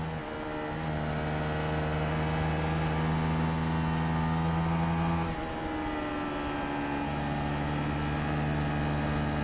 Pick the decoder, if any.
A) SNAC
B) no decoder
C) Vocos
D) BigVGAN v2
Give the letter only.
B